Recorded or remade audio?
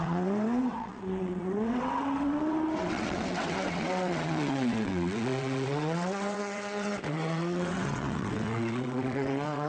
remade